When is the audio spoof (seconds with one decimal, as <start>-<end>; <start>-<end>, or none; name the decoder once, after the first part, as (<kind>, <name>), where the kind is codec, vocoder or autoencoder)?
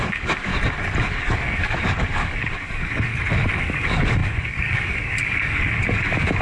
0.0-0.5 (codec, DAC); 1.1-3.1; 3.6-6.4